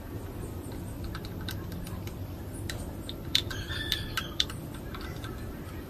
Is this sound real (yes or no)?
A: no